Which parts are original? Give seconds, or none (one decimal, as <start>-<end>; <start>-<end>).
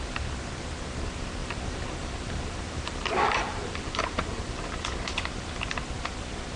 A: 0.0-1.4; 4.7-6.6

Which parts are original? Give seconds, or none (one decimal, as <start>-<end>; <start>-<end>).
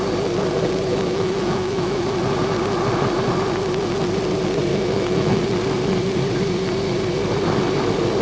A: 0.0-0.9; 2.0-4.7; 5.4-8.2